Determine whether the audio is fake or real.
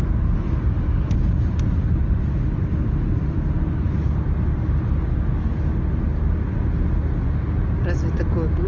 real